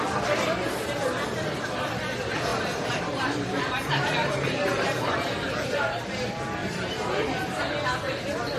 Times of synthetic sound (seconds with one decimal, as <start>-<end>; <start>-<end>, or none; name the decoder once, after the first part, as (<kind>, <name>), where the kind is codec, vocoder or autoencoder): 2.5-6.0 (vocoder, BigVGAN v2); 6.6-7.6